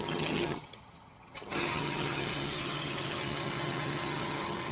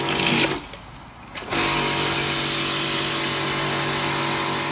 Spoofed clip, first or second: first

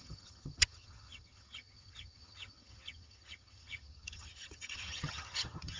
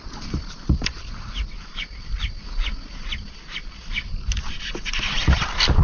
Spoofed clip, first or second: first